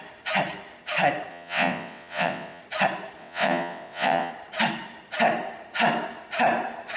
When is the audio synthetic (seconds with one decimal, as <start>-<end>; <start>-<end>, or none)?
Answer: 1.3-2.6; 3.2-4.3